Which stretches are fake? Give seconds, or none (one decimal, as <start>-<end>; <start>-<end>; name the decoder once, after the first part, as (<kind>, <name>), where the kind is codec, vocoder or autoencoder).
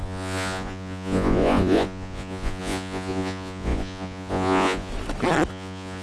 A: 0.0-4.9 (vocoder, Vocos); 5.5-6.0